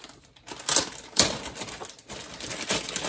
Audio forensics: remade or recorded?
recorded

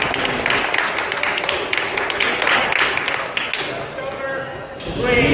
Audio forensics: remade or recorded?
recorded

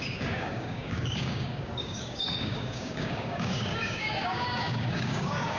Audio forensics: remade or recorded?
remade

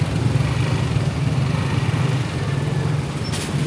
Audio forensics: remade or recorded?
recorded